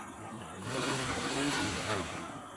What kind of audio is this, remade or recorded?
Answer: remade